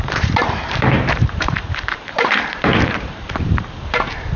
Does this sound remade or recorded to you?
remade